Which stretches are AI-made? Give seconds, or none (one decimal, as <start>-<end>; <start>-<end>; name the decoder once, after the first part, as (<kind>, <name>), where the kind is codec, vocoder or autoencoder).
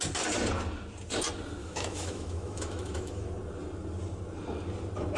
1.6-3.3 (autoencoder, DAC-VAE)